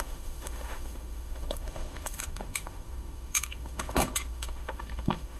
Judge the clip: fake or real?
fake